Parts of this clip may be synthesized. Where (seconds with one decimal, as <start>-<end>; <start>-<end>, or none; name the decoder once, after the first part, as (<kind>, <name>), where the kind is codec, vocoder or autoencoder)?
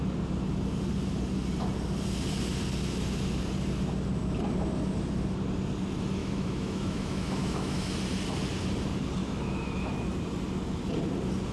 6.2-7.9 (autoencoder, DAC-VAE); 9.2-9.9